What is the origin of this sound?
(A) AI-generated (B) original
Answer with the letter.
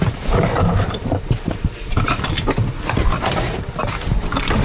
A